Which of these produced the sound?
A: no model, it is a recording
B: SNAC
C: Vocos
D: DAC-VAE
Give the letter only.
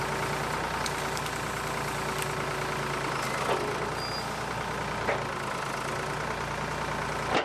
A